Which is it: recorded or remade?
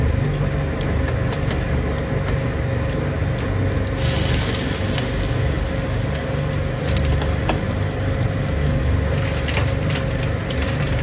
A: recorded